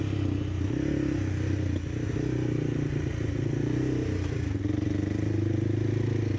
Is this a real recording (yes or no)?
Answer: yes